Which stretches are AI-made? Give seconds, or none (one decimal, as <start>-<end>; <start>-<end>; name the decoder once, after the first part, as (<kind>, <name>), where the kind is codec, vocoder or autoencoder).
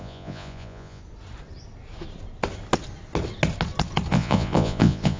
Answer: 0.0-1.0 (vocoder, Vocos); 4.1-5.2